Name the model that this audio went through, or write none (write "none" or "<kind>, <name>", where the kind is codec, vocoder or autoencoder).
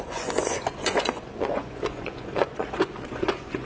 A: vocoder, Vocos